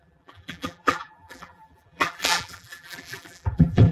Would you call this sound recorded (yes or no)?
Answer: no